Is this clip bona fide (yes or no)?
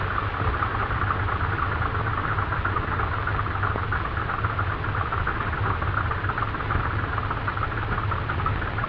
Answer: yes